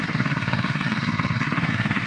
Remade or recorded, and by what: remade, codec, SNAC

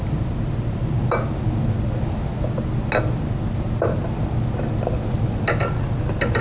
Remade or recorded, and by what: recorded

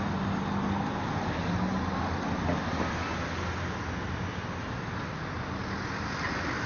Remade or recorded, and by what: recorded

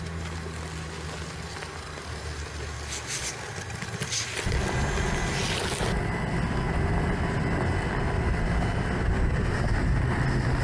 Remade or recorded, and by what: recorded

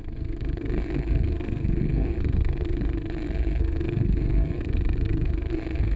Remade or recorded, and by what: remade, codec, SNAC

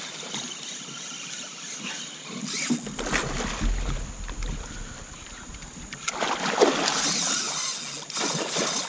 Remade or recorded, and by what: recorded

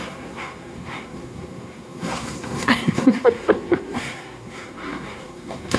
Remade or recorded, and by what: remade, codec, SNAC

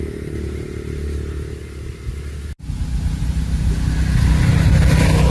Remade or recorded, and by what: recorded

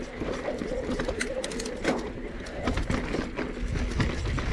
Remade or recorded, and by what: recorded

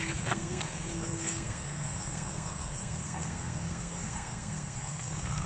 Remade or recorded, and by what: remade, codec, SNAC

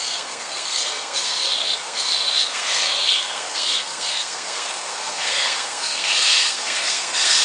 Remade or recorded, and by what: remade, codec, SNAC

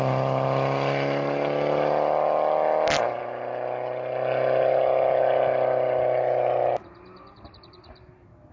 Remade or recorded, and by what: recorded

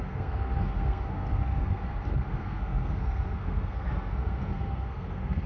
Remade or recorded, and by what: remade, codec, SNAC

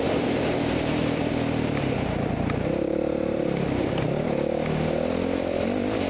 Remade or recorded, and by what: recorded